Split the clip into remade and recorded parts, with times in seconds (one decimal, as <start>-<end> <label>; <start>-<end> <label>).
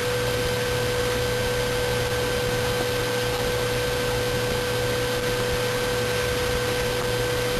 0.0-7.6 recorded